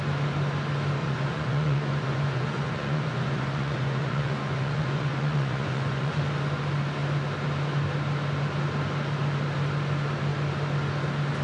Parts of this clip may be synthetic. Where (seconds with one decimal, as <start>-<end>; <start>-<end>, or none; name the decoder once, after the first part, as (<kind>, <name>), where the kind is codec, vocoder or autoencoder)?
1.0-6.2 (vocoder, Vocos)